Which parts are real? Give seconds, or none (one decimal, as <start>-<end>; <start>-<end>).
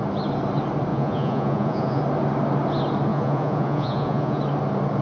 0.0-0.9; 2.0-3.1; 4.4-5.0